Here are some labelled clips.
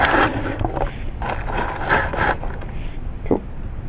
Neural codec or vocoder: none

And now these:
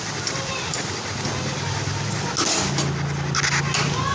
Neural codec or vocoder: none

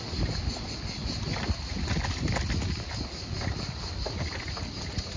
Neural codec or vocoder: none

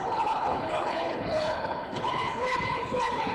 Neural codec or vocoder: codec, HILCodec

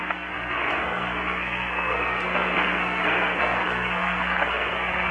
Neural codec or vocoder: codec, SNAC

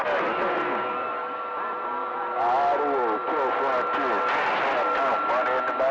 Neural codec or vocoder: none